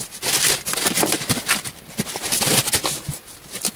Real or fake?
real